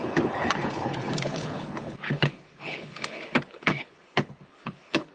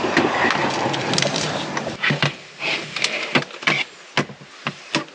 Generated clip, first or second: first